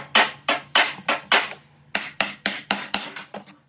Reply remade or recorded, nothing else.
recorded